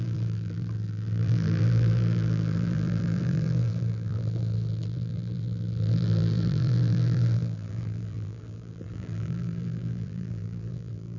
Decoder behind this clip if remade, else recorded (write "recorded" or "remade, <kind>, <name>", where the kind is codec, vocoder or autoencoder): remade, vocoder, BigVGAN v2